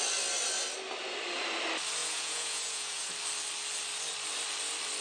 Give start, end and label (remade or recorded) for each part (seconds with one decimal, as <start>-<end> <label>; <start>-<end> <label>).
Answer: 0.0-2.0 recorded; 2.0-3.1 remade; 3.1-5.0 recorded